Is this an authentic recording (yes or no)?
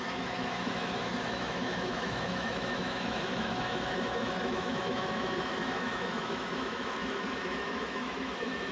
no